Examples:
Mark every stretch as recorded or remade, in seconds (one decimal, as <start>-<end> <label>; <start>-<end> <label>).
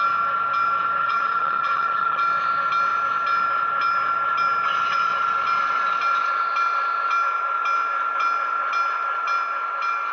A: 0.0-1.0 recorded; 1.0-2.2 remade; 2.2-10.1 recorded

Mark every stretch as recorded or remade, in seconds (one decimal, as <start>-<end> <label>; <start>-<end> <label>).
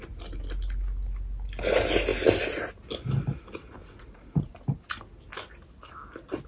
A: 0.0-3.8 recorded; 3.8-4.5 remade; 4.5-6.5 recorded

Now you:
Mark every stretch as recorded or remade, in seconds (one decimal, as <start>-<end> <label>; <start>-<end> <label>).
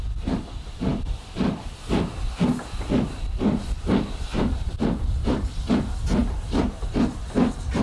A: 0.0-0.9 recorded; 0.9-1.7 remade; 1.7-4.3 recorded; 4.3-5.6 remade; 5.6-6.2 recorded; 6.2-6.8 remade; 6.8-7.8 recorded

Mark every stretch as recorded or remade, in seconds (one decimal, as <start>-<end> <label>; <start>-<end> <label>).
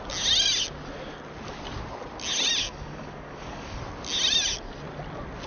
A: 0.0-2.6 recorded; 2.6-3.8 remade; 3.8-5.5 recorded